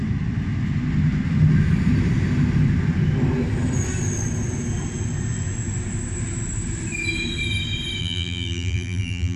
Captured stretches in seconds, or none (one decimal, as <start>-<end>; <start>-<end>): 0.0-8.0